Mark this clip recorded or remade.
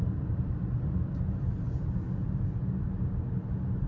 recorded